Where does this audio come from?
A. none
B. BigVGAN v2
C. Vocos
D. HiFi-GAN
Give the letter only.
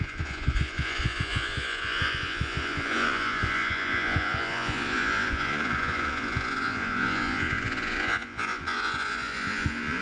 C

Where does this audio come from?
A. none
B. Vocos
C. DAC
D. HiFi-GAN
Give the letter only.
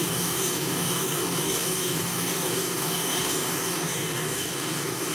C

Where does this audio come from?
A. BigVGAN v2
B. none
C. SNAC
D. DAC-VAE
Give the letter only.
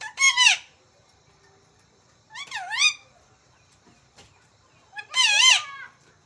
A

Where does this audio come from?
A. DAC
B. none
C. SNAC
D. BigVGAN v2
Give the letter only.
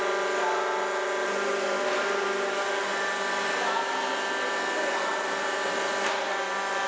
B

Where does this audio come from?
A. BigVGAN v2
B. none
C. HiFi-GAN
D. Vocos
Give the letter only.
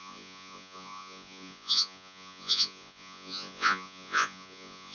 D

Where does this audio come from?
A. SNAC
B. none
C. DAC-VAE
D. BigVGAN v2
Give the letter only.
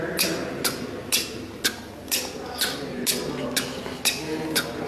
B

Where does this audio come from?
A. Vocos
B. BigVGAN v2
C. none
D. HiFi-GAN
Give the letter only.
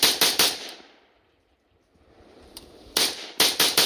B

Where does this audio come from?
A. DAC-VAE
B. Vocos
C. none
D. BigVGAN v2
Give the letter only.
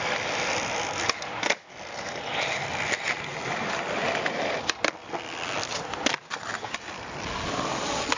C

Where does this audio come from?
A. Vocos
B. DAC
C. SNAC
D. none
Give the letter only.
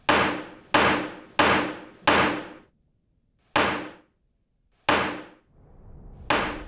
D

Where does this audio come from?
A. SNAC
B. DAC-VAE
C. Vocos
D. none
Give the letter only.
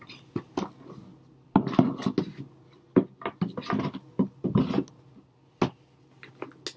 D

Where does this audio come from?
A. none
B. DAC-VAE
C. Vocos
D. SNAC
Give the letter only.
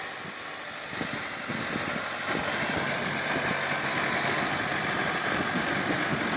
A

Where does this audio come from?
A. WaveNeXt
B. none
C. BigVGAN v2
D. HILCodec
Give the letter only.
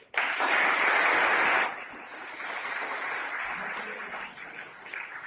B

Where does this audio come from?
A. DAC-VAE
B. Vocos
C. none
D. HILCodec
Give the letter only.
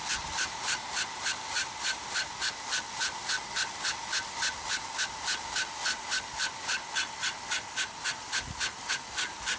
C